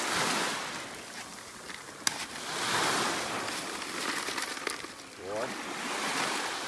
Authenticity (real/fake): real